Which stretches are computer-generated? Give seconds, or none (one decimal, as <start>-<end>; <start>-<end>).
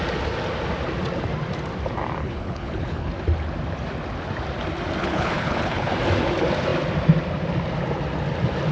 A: 2.2-3.1; 5.0-5.9